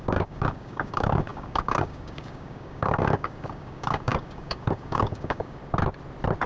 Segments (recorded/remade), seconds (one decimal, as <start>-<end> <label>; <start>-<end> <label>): 0.0-5.6 remade; 5.6-6.5 recorded